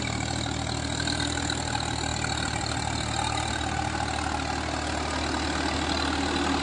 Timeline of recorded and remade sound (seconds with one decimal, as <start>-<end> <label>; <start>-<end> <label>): 0.0-6.6 recorded